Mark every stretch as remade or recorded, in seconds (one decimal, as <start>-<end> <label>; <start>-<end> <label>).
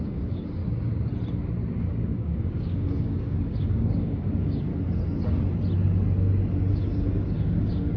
0.0-0.6 remade; 0.6-1.9 recorded; 1.9-4.7 remade; 4.7-6.7 recorded; 6.7-8.0 remade